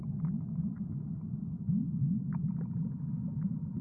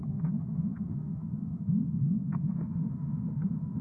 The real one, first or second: first